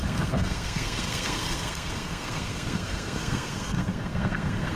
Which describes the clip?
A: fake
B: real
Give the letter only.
A